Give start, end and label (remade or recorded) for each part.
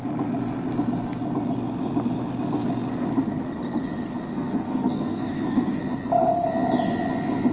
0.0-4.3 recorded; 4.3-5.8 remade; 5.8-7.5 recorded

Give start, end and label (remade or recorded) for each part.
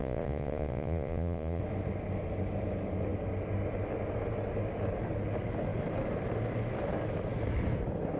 0.0-1.6 remade; 1.6-8.2 recorded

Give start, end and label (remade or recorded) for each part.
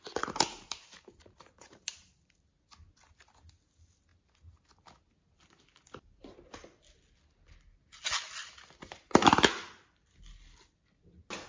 0.0-0.5 recorded; 0.5-2.2 remade; 2.2-11.5 recorded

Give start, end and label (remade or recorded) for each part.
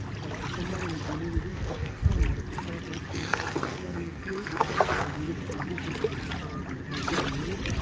0.0-1.5 recorded; 1.5-2.1 remade; 2.1-3.1 recorded; 3.1-5.3 remade; 5.3-7.8 recorded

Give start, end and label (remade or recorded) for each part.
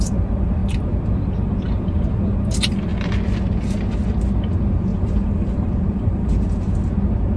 0.0-4.9 recorded; 4.9-6.3 remade; 6.3-7.4 recorded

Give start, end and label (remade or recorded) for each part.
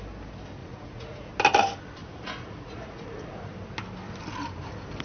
0.0-0.6 recorded; 0.6-1.3 remade; 1.3-2.0 recorded; 2.0-3.5 remade; 3.5-5.0 recorded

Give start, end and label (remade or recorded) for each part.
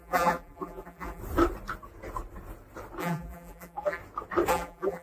0.0-1.2 remade; 1.2-3.0 recorded; 3.0-4.0 remade; 4.0-4.5 recorded; 4.5-5.0 remade